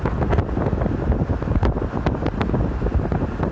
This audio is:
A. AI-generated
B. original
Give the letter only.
B